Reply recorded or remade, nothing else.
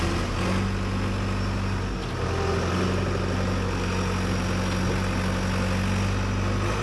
recorded